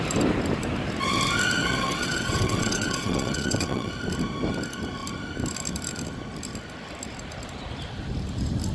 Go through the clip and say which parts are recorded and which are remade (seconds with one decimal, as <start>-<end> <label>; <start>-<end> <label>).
0.0-1.6 recorded; 1.6-3.9 remade; 3.9-8.7 recorded